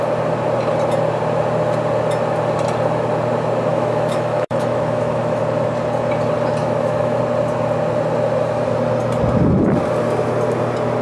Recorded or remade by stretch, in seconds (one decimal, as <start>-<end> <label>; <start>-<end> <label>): 0.0-3.7 recorded; 3.7-5.4 remade; 5.4-6.6 recorded; 6.6-7.2 remade; 7.2-11.0 recorded